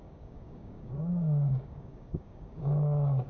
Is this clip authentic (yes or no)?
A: no